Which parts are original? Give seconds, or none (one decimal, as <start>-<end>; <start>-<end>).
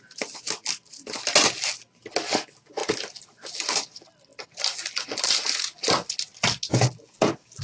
0.0-7.6